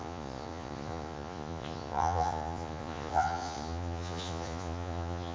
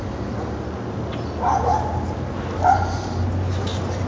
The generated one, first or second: first